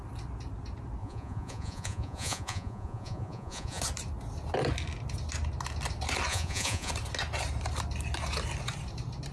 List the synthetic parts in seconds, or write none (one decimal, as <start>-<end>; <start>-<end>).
1.0-3.8; 6.3-6.9